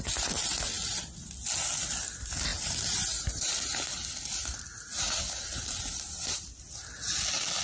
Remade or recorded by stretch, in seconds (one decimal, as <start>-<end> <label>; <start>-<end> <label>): 0.0-7.6 recorded